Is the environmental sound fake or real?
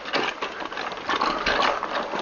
real